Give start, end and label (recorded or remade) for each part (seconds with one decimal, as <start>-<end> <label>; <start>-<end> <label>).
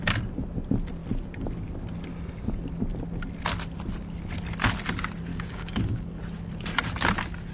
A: 0.0-5.3 recorded; 5.3-6.2 remade; 6.2-7.5 recorded